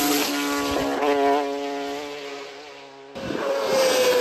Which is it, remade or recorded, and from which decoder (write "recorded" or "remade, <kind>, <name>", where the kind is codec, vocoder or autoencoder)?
recorded